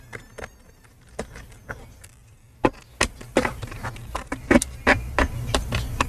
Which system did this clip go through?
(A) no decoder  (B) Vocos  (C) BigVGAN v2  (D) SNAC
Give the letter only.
A